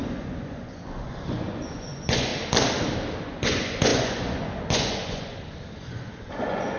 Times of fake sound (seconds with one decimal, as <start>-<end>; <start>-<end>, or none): 0.0-2.3; 3.2-5.3; 5.8-6.8